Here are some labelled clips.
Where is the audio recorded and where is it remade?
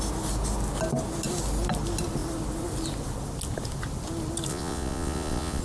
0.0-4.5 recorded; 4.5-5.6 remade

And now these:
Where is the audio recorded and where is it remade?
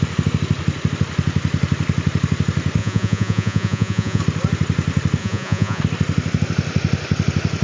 0.0-2.8 recorded; 2.8-4.2 remade; 4.2-5.2 recorded; 5.2-5.8 remade; 5.8-7.6 recorded